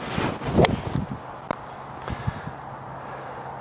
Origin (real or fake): real